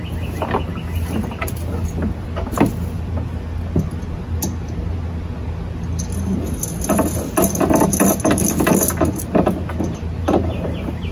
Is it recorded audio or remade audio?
recorded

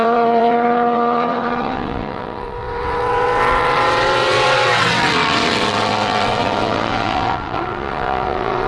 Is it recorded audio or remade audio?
remade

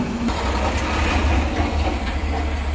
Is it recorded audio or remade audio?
recorded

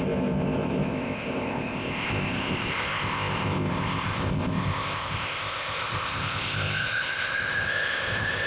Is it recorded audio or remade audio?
remade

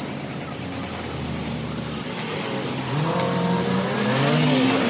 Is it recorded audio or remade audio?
recorded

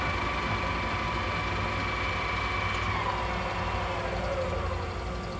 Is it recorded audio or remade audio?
recorded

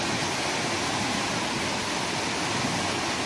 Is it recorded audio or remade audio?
recorded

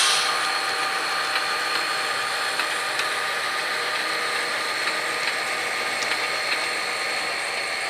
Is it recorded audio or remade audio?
recorded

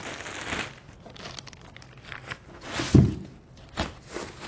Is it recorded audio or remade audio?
recorded